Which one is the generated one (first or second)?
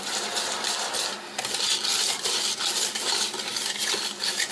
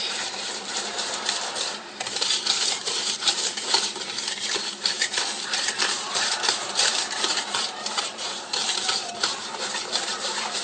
second